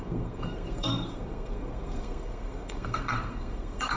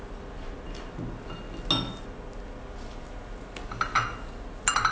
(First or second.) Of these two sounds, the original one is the second